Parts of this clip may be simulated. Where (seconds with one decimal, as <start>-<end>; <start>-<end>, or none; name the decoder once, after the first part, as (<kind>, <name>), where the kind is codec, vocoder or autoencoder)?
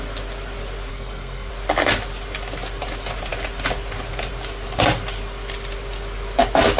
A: 0.9-1.5 (codec, SNAC)